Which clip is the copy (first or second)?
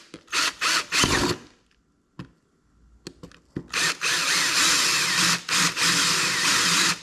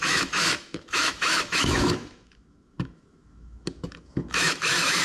second